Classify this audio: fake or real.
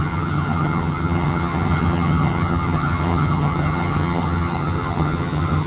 fake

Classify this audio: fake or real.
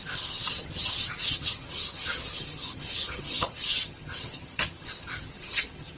fake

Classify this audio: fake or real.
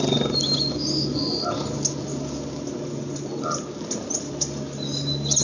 real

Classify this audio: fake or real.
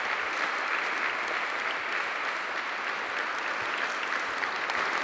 real